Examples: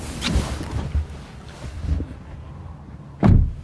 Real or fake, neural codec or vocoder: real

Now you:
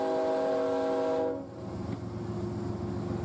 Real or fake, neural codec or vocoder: real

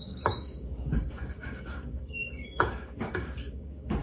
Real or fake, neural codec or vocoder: fake, codec, DAC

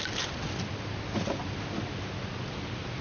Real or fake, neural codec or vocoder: real